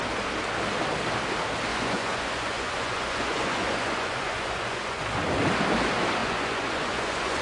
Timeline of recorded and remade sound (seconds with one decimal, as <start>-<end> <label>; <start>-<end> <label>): 0.0-1.7 recorded; 1.7-5.0 remade; 5.0-6.2 recorded; 6.2-7.4 remade